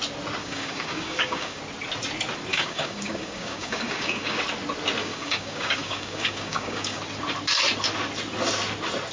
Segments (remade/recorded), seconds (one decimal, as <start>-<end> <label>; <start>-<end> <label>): 0.0-0.4 recorded; 0.4-1.6 remade; 1.6-2.5 recorded; 2.5-4.4 remade; 4.4-5.0 recorded; 5.0-7.0 remade; 7.0-9.1 recorded